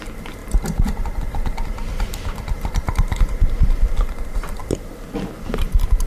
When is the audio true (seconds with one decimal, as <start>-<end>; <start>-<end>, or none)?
0.0-6.1